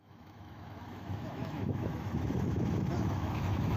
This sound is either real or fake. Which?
fake